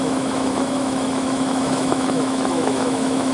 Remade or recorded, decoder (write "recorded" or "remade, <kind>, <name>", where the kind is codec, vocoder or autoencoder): remade, autoencoder, DAC-VAE